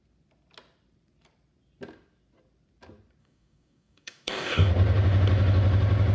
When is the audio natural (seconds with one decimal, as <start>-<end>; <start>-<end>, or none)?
0.0-3.2; 4.7-6.1